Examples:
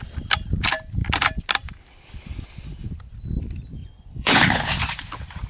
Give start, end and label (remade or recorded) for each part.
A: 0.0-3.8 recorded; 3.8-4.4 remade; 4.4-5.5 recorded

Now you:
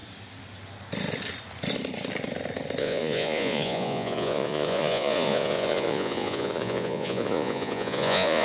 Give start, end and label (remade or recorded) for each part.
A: 0.0-2.8 recorded; 2.8-8.4 remade

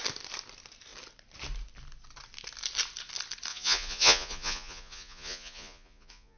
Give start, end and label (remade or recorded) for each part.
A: 0.0-3.5 recorded; 3.5-6.4 remade

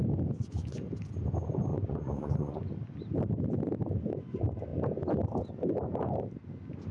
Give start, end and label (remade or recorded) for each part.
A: 0.0-1.7 recorded; 1.7-2.6 remade; 2.6-6.9 recorded

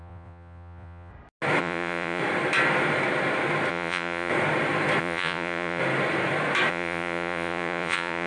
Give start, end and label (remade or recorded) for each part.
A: 0.0-1.1 remade; 1.1-1.6 recorded; 1.6-2.2 remade; 2.2-3.7 recorded; 3.7-4.3 remade; 4.3-5.0 recorded; 5.0-5.8 remade; 5.8-6.7 recorded; 6.7-8.3 remade

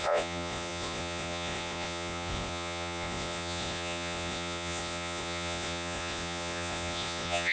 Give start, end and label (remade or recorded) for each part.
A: 0.0-7.5 remade